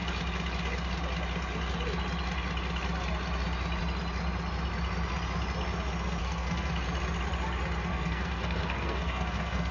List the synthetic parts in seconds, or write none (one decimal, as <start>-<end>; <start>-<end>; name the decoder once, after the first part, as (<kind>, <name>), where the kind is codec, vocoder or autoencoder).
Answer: 6.2-6.7 (codec, SNAC); 7.9-9.7